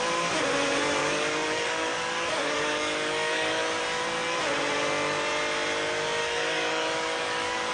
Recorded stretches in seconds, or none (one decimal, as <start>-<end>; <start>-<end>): 0.0-1.0; 3.8-6.2